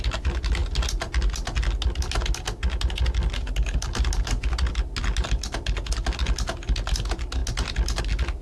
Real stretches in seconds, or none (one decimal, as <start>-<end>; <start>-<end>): 0.0-8.4